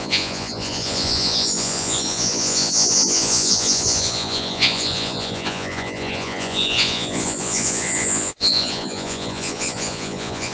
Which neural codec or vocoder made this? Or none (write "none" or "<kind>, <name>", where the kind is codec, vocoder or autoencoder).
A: vocoder, Vocos